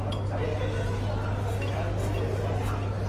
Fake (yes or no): no